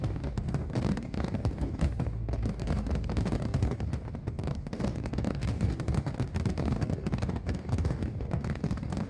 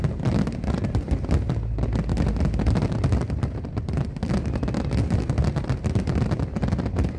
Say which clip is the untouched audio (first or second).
second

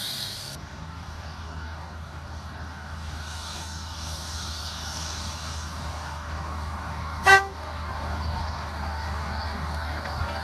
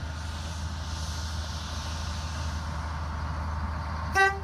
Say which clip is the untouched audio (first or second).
second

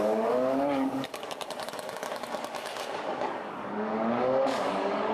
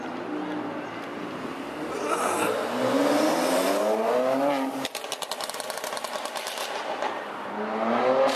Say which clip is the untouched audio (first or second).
second